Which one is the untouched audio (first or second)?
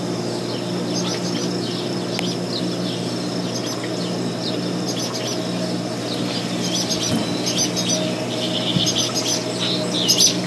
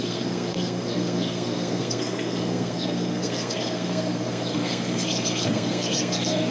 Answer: first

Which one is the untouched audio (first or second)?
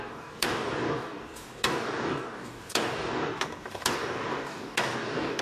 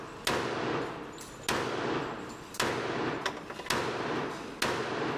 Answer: second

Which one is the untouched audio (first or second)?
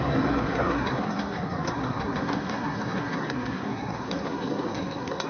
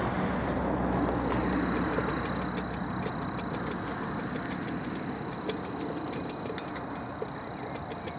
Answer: second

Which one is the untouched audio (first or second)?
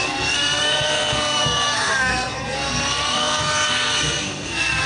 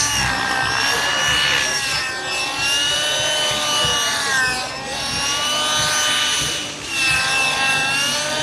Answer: second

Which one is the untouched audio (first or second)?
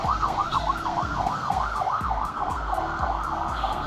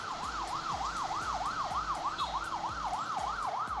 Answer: second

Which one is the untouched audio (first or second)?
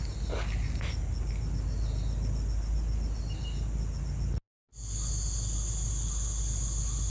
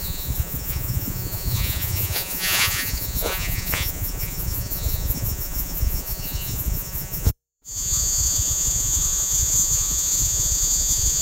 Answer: first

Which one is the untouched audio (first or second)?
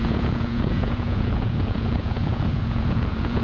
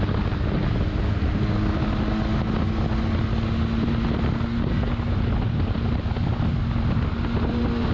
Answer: second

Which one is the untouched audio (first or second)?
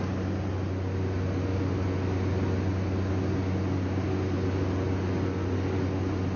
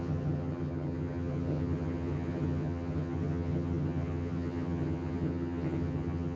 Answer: first